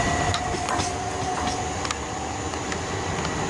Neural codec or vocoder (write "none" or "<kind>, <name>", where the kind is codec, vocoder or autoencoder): none